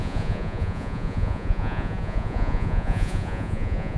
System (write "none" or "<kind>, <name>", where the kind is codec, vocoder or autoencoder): vocoder, Vocos